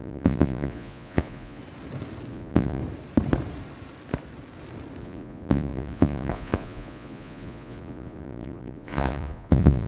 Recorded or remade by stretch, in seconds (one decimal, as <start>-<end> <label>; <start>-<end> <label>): 0.0-1.6 remade; 1.6-2.3 recorded; 2.3-2.8 remade; 2.8-5.0 recorded; 5.0-9.9 remade